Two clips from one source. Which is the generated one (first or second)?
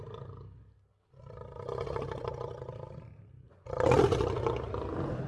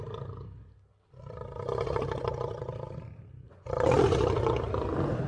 second